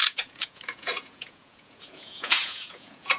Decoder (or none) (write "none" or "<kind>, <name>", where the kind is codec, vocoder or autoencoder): vocoder, Vocos